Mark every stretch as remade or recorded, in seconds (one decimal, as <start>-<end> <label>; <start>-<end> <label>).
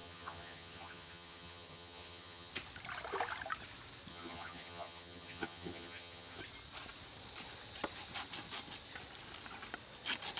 0.0-2.5 remade; 2.5-4.1 recorded; 4.1-6.4 remade; 6.4-10.4 recorded